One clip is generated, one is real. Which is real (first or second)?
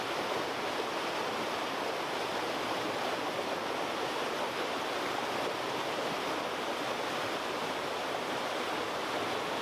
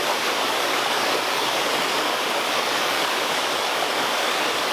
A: first